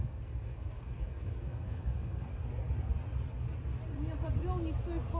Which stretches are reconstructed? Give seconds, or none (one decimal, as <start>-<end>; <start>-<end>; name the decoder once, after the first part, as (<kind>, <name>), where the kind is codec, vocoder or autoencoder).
0.0-2.3 (codec, SNAC)